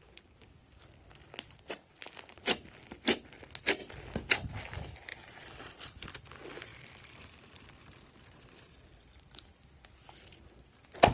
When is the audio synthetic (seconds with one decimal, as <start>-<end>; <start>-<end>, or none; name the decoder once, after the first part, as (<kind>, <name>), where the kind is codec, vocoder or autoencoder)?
5.1-6.2 (vocoder, BigVGAN v2); 6.7-7.2